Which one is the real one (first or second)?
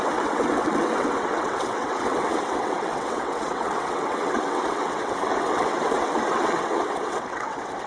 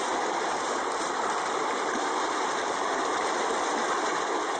second